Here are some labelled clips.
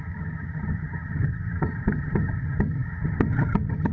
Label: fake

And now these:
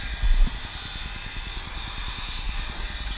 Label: real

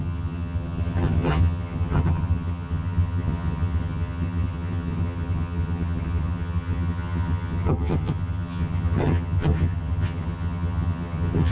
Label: fake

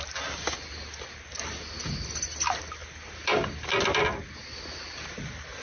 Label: real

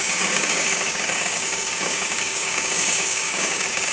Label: fake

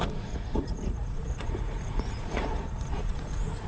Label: fake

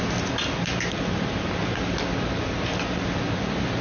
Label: real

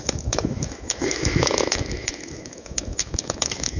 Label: fake